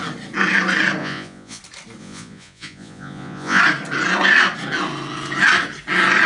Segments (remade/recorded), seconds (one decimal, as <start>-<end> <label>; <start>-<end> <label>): 0.0-1.0 recorded; 1.0-1.6 remade; 1.6-2.0 recorded; 2.0-3.6 remade; 3.6-6.3 recorded